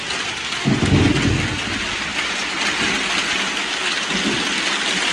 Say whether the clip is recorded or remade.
recorded